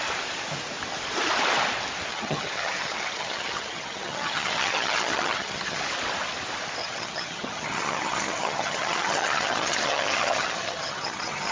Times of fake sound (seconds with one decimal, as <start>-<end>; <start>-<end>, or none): 2.1-5.8; 6.8-11.5